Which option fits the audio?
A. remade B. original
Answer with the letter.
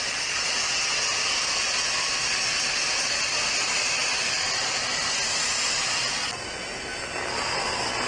B